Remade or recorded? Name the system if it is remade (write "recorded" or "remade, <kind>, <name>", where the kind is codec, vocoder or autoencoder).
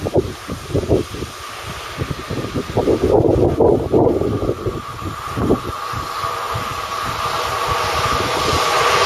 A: recorded